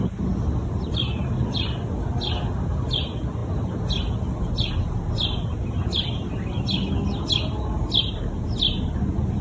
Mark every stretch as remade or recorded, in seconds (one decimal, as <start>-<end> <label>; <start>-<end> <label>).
0.0-9.4 recorded